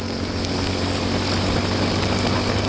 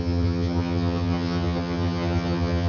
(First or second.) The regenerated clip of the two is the second